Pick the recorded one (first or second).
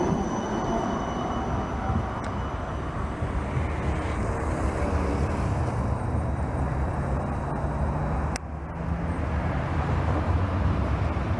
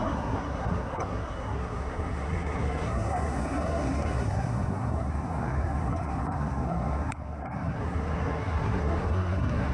first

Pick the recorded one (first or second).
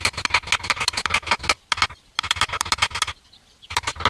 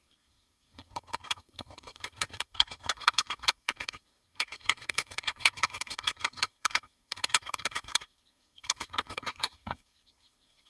first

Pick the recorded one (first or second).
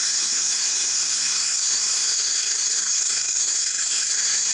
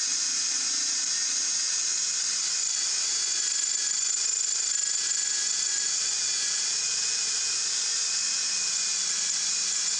second